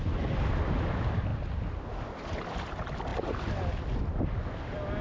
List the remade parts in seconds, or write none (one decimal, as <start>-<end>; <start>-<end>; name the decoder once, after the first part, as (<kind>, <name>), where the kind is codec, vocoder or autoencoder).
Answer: none

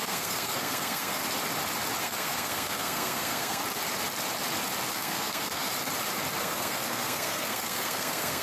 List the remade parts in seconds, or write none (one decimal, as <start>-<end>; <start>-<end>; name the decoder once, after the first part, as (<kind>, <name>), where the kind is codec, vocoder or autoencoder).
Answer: 0.0-1.2 (codec, SNAC); 2.0-3.6; 4.9-5.7; 6.4-8.4

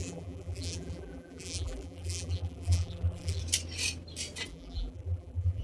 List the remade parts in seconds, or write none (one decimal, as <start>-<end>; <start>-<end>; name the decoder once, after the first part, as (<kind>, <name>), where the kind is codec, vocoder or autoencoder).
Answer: 0.0-3.4 (vocoder, BigVGAN v2); 4.5-5.6